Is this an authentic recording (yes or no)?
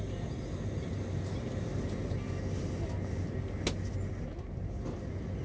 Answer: yes